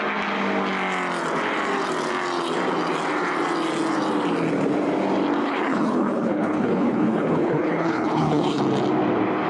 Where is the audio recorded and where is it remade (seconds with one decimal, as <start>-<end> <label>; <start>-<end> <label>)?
0.0-5.4 recorded; 5.4-8.6 remade; 8.6-9.5 recorded